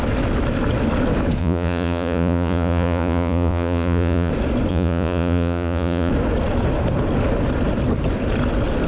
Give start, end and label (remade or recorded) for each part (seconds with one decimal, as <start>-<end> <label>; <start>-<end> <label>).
0.0-1.4 recorded; 1.4-4.3 remade; 4.3-4.7 recorded; 4.7-6.1 remade; 6.1-8.9 recorded